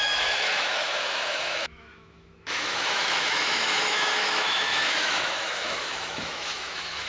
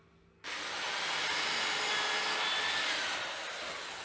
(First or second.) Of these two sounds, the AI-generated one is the first